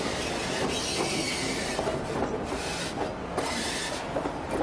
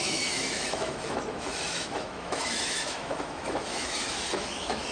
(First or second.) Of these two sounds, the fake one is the second